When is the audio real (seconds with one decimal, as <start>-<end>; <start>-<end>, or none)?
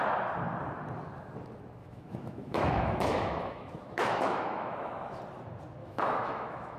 0.0-1.8; 5.2-5.8